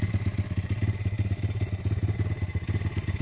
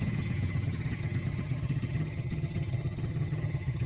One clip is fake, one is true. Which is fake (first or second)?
second